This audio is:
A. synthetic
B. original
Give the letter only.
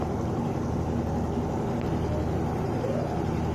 B